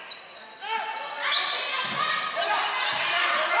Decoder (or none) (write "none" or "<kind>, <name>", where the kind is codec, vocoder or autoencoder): none